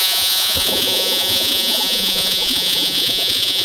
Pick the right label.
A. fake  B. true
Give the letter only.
A